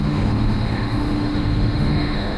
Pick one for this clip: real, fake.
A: fake